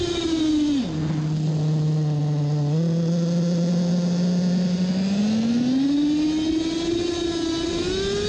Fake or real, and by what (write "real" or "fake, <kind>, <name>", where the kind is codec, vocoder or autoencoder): real